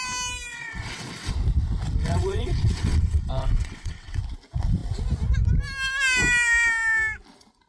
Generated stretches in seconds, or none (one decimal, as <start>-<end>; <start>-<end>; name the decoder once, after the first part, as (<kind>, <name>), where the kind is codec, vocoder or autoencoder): 0.5-1.3 (vocoder, WaveNeXt); 2.0-4.2